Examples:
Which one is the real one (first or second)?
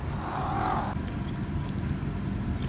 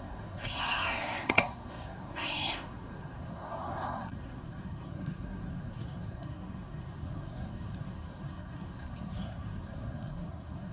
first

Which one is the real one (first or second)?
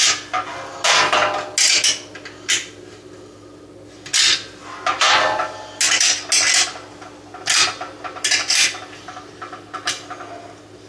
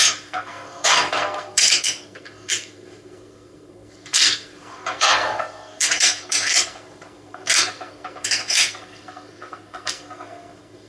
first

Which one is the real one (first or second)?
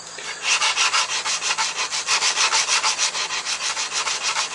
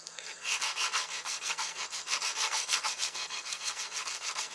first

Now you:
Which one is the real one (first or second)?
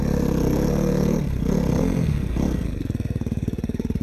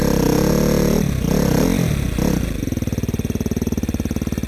second